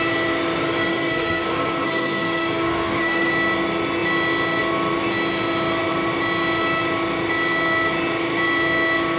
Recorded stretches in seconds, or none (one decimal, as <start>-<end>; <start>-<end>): 0.0-0.9; 3.3-9.2